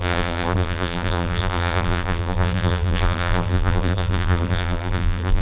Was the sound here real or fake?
fake